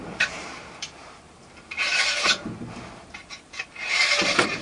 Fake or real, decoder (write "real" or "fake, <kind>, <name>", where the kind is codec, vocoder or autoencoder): fake, vocoder, BigVGAN v2